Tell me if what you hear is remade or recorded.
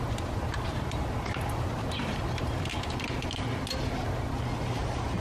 recorded